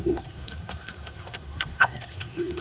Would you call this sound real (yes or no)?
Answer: no